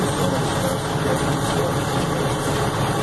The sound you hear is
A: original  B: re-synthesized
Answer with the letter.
A